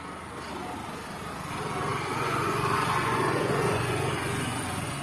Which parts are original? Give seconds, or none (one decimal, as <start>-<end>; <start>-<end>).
0.0-1.9